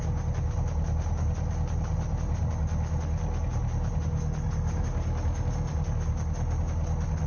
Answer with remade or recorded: recorded